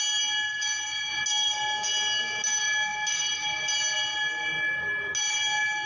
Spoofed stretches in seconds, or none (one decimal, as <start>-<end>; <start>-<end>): none